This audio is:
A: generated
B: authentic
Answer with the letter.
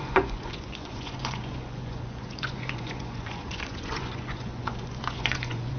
A